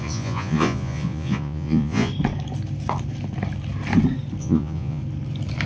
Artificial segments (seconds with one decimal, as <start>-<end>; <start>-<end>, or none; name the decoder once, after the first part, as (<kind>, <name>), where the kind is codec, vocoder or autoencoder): 0.0-2.1 (vocoder, Vocos); 4.4-5.0

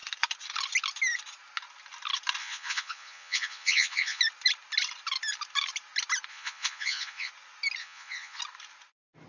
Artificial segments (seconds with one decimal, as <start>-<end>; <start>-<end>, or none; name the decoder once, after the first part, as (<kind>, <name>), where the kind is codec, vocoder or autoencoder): 2.4-4.2 (vocoder, Vocos); 6.3-7.3; 7.8-8.4

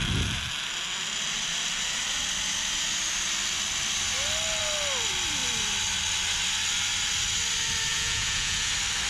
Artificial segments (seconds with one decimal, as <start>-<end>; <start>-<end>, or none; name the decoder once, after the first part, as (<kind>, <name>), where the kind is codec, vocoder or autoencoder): 7.9-8.7 (vocoder, Vocos)

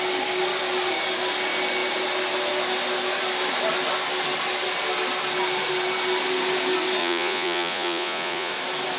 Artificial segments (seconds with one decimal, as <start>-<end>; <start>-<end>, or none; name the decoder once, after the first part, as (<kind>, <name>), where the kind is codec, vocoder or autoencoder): 7.0-8.5 (vocoder, Vocos)

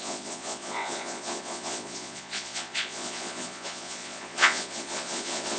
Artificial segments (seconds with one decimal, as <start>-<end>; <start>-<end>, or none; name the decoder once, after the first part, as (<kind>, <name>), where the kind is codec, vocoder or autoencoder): 0.0-5.6 (vocoder, Vocos)

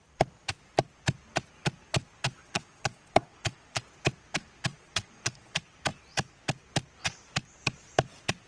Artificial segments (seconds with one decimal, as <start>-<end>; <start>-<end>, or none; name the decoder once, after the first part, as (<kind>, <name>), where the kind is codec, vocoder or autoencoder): 2.4-3.8 (vocoder, Vocos); 4.7-5.5